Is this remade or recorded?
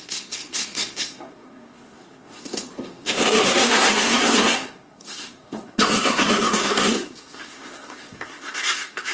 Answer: remade